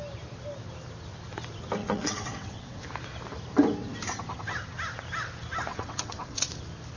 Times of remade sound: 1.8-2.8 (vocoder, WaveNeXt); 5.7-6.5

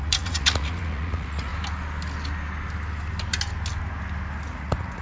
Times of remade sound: 0.0-1.5 (vocoder, Vocos); 4.5-5.0

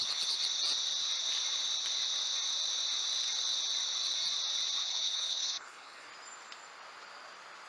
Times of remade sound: 0.0-0.4 (codec, HILCodec); 4.8-6.1

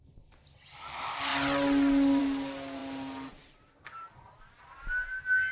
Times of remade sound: none